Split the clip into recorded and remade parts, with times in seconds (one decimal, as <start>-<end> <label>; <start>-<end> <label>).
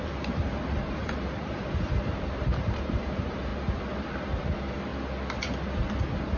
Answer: 0.0-3.5 remade; 3.5-4.4 recorded; 4.4-4.9 remade; 4.9-6.4 recorded